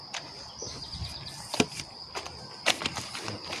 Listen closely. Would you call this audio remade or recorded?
recorded